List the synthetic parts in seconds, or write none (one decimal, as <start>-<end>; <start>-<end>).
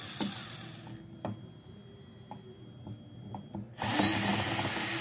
none